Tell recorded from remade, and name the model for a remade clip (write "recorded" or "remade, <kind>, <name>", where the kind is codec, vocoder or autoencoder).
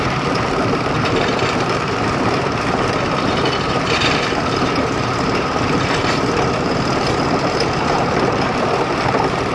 remade, vocoder, BigVGAN v2